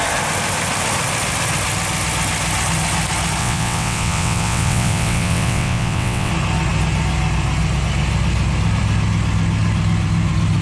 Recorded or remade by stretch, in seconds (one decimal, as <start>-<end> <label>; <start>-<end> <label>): 0.0-3.4 recorded; 3.4-6.3 remade; 6.3-10.6 recorded